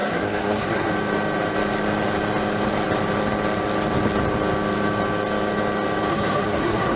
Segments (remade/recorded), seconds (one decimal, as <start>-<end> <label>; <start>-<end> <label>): 0.0-0.9 remade; 0.9-6.1 recorded; 6.1-7.0 remade